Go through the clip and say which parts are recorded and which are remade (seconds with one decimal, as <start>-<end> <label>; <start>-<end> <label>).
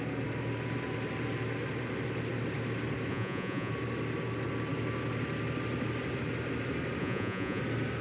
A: 0.0-3.1 recorded; 3.1-3.7 remade; 3.7-7.0 recorded; 7.0-7.6 remade; 7.6-8.0 recorded